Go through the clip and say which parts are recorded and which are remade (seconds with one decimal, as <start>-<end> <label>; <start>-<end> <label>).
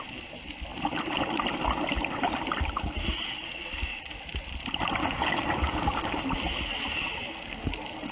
0.0-5.0 recorded; 5.0-6.2 remade; 6.2-8.1 recorded